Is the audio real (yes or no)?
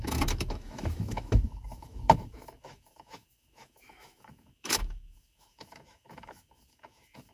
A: no